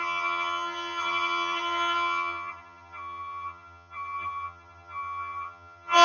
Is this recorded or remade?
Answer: remade